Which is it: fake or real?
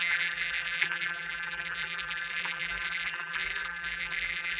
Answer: fake